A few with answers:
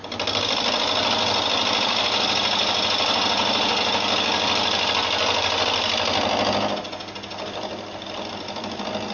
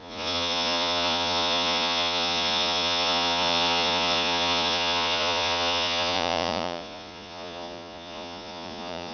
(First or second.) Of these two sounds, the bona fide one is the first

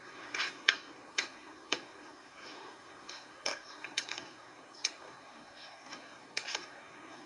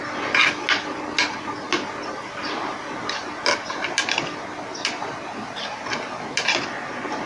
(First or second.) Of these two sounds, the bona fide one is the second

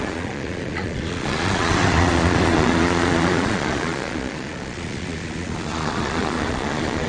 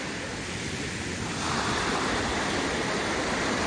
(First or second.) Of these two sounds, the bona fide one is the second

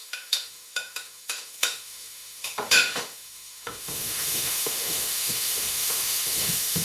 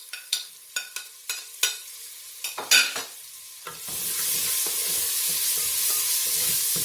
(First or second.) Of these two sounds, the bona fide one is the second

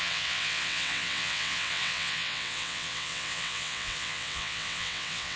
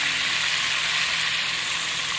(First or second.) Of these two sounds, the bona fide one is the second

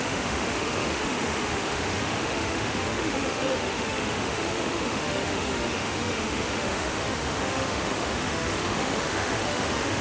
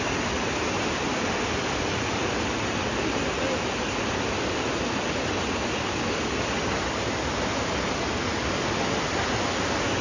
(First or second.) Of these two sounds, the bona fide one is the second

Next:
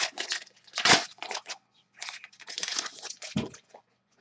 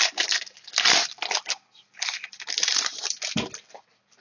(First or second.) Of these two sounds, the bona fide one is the second